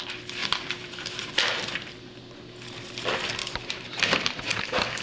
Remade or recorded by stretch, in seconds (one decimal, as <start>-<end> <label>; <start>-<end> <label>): 0.0-0.4 recorded; 0.4-2.2 remade; 2.2-3.4 recorded; 3.4-4.6 remade; 4.6-5.0 recorded